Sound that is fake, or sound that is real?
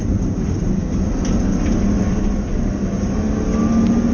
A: real